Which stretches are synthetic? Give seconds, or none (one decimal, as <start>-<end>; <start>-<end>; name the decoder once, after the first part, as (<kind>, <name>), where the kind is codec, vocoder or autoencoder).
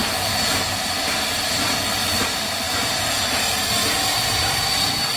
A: 0.0-0.7 (vocoder, BigVGAN v2); 2.0-2.6; 3.8-5.2